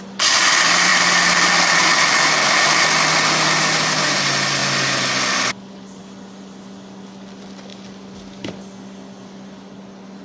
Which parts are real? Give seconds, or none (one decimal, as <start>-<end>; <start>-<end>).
0.0-10.2